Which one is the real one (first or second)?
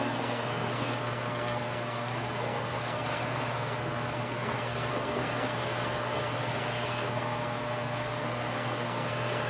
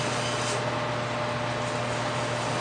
second